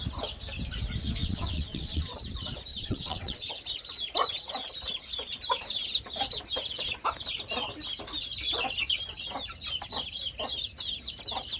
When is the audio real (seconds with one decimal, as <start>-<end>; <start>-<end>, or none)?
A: 0.0-1.2; 2.1-2.7; 3.5-11.6